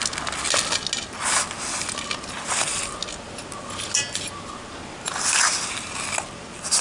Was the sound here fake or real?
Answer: real